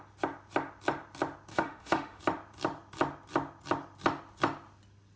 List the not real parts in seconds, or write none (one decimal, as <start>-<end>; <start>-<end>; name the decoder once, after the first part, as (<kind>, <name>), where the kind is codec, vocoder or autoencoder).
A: 1.5-2.2 (autoencoder, DAC-VAE)